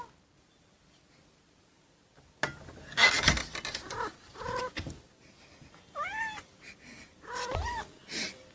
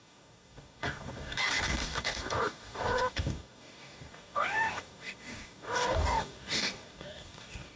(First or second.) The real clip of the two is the first